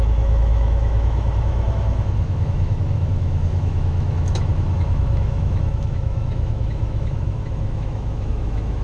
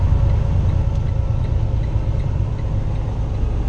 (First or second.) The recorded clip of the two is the second